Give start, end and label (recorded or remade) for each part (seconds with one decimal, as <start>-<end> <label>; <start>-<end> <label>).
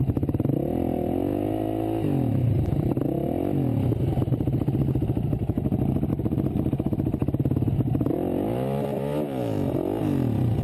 0.0-10.6 recorded